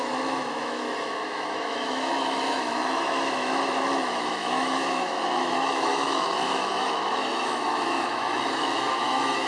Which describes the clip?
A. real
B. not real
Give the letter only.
B